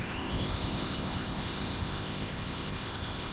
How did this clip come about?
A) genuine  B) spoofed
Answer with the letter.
B